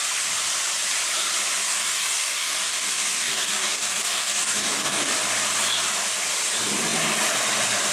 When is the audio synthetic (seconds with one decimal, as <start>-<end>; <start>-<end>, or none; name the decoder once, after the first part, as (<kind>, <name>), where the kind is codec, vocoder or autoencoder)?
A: 1.7-5.1 (codec, DAC)